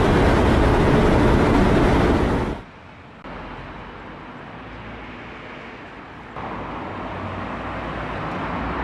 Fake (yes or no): no